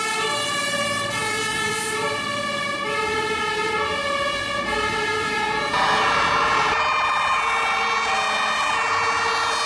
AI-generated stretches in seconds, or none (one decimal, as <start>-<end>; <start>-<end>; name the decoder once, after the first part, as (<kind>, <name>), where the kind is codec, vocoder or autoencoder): none